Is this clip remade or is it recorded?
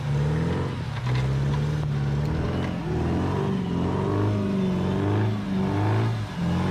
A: recorded